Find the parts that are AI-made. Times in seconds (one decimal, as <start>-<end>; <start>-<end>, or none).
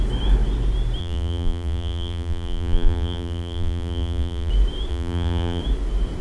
1.0-4.5; 4.9-5.6